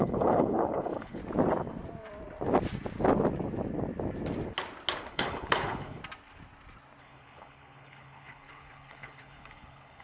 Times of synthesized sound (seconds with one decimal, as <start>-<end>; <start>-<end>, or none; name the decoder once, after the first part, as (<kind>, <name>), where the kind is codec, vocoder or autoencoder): 0.0-1.2 (codec, HILCodec); 5.1-6.0; 7.0-10.0